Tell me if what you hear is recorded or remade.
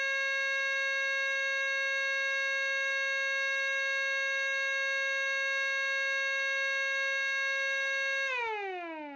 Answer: recorded